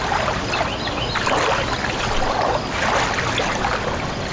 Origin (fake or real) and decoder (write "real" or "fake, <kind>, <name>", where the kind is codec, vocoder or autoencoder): real